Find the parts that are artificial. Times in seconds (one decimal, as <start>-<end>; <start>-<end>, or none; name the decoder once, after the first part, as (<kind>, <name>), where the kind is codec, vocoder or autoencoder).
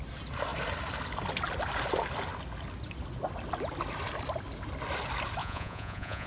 5.4-6.3 (vocoder, Vocos)